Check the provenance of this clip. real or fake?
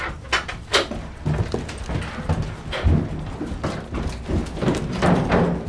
real